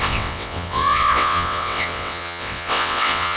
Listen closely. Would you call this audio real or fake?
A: fake